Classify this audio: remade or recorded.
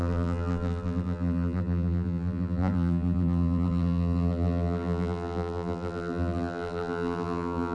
remade